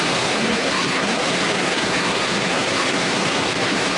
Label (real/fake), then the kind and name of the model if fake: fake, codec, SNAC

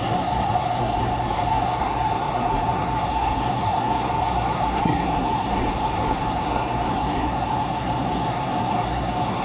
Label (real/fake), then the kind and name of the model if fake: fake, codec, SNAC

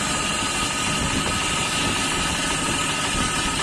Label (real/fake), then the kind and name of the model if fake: real